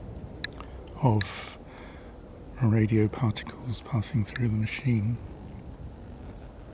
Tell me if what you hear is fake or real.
real